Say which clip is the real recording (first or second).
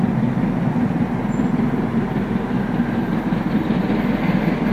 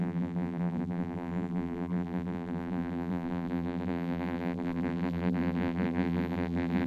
first